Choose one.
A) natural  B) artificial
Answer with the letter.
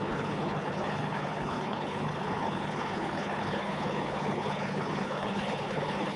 B